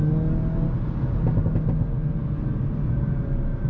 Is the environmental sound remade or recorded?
recorded